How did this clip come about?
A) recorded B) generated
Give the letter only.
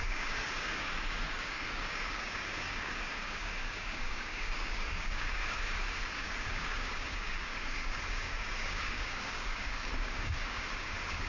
B